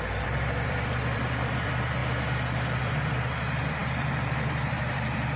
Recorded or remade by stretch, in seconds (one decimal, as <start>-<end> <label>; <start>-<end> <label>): 0.0-2.0 remade; 2.0-2.8 recorded; 2.8-5.4 remade